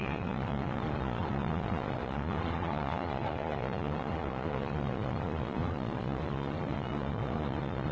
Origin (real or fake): fake